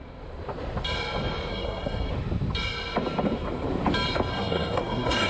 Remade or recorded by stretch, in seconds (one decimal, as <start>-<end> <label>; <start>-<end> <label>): 0.0-1.5 recorded; 1.5-2.1 remade; 2.1-4.3 recorded; 4.3-5.3 remade